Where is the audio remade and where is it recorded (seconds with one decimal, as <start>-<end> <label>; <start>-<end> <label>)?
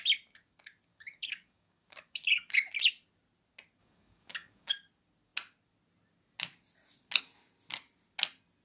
0.0-0.9 recorded; 0.9-2.7 remade; 2.7-3.8 recorded; 3.8-4.7 remade; 4.7-8.6 recorded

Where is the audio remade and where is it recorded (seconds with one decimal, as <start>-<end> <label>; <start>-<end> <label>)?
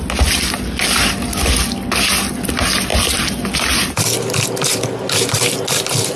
0.0-6.2 recorded